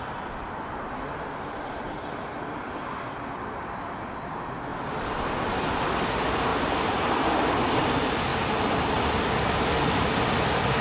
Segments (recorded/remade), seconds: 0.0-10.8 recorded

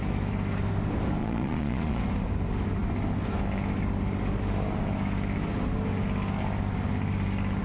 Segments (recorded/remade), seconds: 0.0-1.2 recorded; 1.2-2.0 remade; 2.0-7.6 recorded

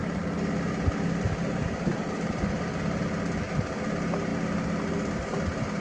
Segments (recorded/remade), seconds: 0.0-5.8 recorded

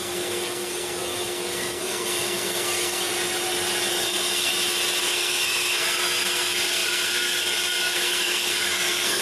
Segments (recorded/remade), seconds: 0.0-3.1 remade; 3.1-3.9 recorded; 3.9-4.5 remade; 4.5-5.0 recorded; 5.0-9.2 remade

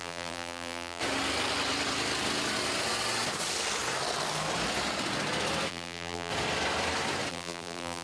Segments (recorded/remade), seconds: 0.0-1.0 remade; 1.0-5.7 recorded; 5.7-6.3 remade; 6.3-7.3 recorded; 7.3-8.0 remade

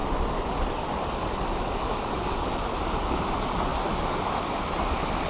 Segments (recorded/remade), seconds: 0.0-5.3 recorded

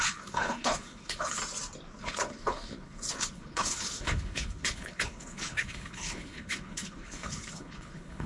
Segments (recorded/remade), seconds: 0.0-1.4 remade; 1.4-2.0 recorded; 2.0-8.3 remade